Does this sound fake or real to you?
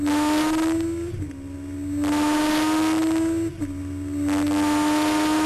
real